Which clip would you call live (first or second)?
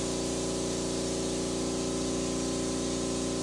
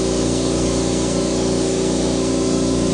first